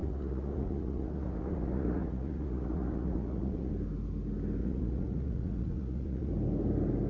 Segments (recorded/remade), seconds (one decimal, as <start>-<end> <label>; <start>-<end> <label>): 0.0-3.7 remade; 3.7-4.6 recorded; 4.6-6.3 remade; 6.3-7.1 recorded